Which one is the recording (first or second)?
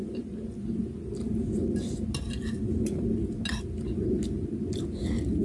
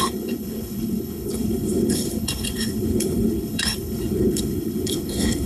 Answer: first